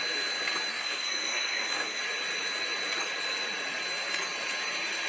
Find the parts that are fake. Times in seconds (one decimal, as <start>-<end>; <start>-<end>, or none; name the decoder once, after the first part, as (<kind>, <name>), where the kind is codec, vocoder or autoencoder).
0.7-2.0 (codec, SNAC)